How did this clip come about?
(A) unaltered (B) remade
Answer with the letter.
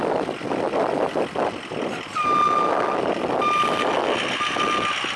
A